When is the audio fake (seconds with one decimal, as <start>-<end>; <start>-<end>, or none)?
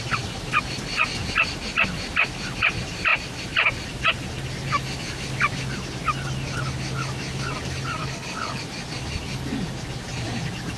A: 8.0-8.6